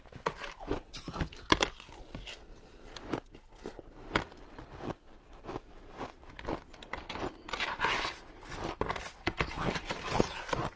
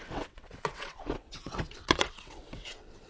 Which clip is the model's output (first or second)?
second